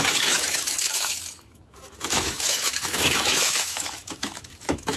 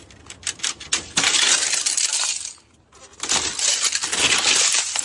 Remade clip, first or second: first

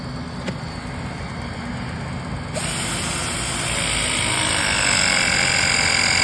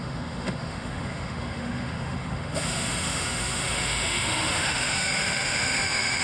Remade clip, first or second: second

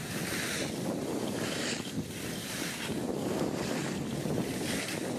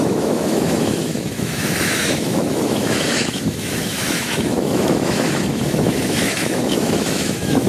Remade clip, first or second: second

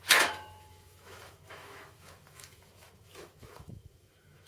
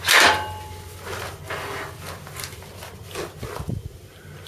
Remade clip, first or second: first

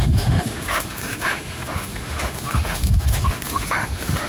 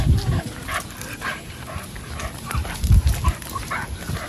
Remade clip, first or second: first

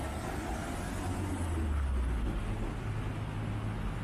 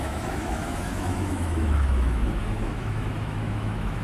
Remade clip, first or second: second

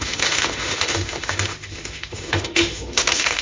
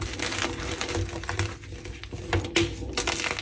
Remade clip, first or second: first